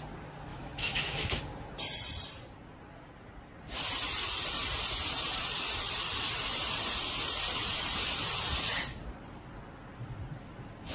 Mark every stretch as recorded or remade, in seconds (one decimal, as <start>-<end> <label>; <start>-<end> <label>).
0.0-0.5 recorded; 0.5-1.4 remade; 1.4-10.9 recorded